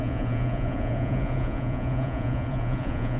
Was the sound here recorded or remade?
remade